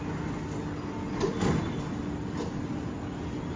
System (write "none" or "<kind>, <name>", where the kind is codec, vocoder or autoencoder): none